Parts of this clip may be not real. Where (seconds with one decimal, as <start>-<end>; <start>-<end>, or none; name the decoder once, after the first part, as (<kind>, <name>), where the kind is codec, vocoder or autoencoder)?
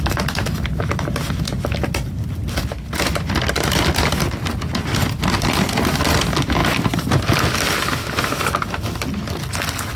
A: none